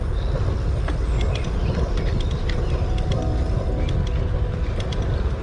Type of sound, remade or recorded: recorded